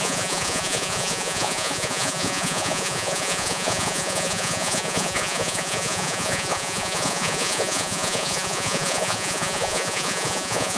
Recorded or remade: remade